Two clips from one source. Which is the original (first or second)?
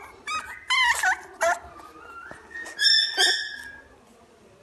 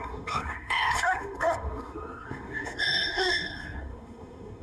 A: first